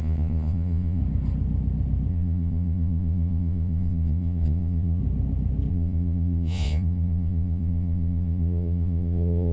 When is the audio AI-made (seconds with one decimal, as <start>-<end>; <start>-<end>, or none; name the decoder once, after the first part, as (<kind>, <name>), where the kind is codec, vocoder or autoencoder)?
0.0-1.0 (vocoder, Vocos); 2.1-5.0; 5.7-9.5